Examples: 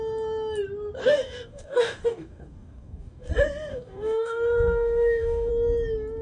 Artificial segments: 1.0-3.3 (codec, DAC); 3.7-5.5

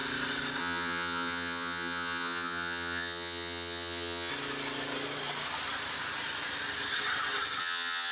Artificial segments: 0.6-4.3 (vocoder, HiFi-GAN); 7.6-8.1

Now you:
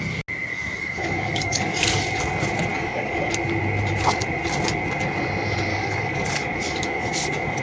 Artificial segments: 0.5-2.0 (codec, DAC); 2.7-3.3; 5.7-7.6

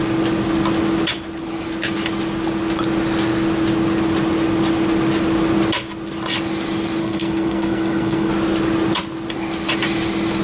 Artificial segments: 7.0-8.3 (codec, SNAC)

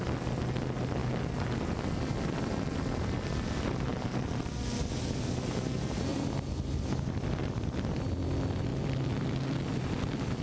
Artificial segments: none